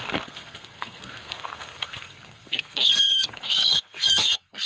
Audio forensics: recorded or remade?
remade